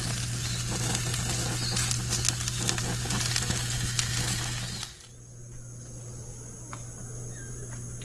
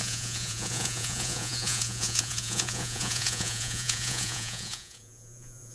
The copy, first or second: second